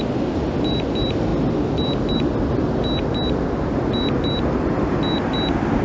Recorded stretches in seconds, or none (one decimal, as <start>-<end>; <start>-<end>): 0.0-5.8